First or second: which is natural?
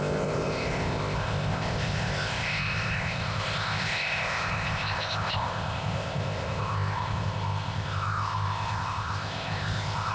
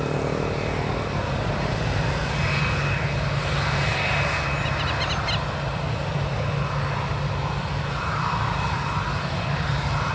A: second